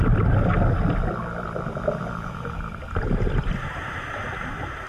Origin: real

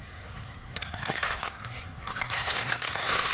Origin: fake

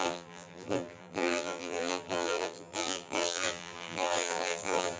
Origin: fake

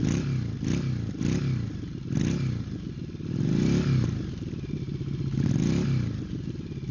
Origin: real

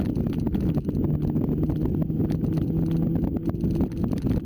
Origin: real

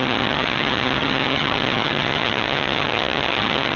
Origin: fake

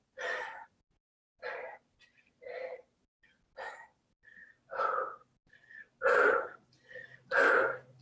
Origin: real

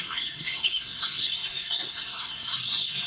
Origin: fake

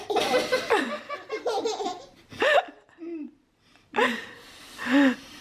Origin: real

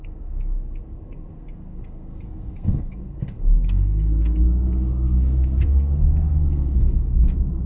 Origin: fake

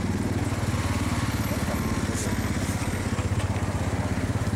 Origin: real